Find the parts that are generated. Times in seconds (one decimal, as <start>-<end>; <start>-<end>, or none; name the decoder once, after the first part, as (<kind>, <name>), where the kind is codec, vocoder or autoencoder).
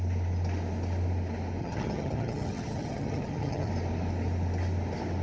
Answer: 1.6-3.7 (vocoder, HiFi-GAN)